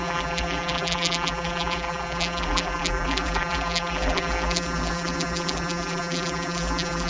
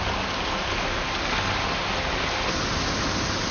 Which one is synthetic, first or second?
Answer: first